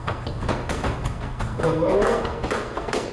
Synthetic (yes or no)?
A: yes